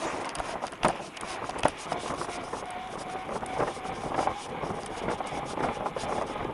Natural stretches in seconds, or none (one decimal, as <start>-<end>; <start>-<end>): 0.0-6.5